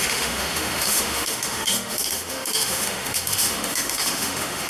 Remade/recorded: remade